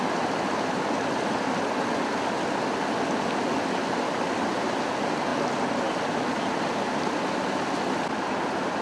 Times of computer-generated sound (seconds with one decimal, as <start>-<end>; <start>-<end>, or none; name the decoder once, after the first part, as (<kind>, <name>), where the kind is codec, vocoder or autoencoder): none